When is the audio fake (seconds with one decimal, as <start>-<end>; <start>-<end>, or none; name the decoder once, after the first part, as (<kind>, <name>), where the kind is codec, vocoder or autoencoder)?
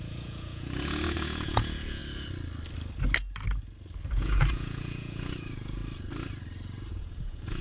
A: 0.0-2.0 (vocoder, Vocos); 4.1-5.8; 6.9-7.6